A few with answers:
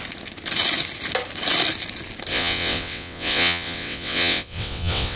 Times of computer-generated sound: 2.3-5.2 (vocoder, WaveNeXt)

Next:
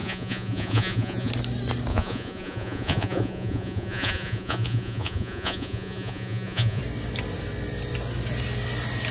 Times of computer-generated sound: 0.0-1.3 (vocoder, Vocos); 1.9-6.8

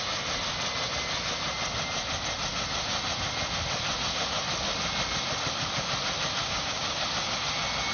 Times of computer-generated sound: 6.4-7.0 (codec, DAC)

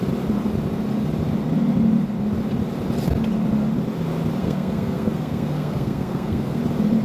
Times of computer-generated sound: 4.4-6.6 (codec, SNAC)

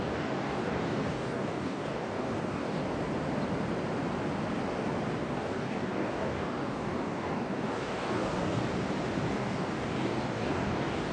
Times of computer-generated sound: 0.0-2.8 (codec, DAC); 5.2-8.6; 9.3-11.1

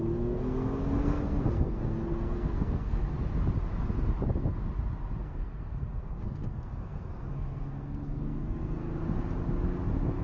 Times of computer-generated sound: 0.0-3.0 (codec, SNAC); 5.2-8.9

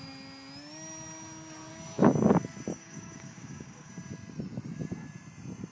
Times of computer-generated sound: 2.7-3.9 (codec, DAC)